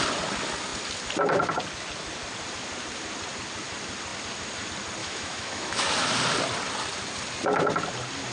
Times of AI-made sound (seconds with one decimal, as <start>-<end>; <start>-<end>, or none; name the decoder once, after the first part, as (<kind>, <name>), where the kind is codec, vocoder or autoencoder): 5.0-5.9 (autoencoder, DAC-VAE)